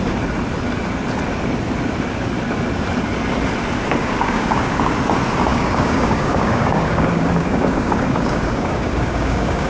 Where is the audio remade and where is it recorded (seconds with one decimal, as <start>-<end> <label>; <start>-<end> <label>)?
0.0-4.0 recorded; 4.0-4.7 remade; 4.7-5.5 recorded; 5.5-9.7 remade